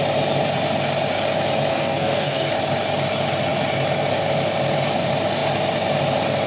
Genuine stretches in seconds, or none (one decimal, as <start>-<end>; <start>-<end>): 0.0-1.7; 2.5-6.5